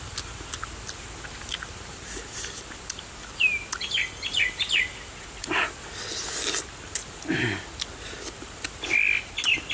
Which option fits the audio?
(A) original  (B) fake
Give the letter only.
A